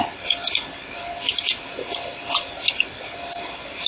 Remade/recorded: remade